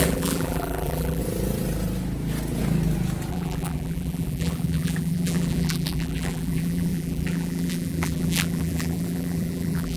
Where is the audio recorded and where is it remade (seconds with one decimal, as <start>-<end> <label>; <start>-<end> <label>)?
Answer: 0.0-1.2 remade; 1.2-3.3 recorded; 3.3-10.0 remade